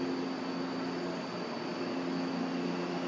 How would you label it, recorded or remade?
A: recorded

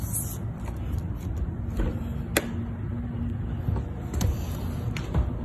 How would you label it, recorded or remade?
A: recorded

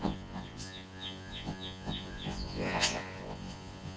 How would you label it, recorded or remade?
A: remade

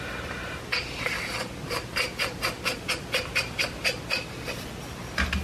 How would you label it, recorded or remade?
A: recorded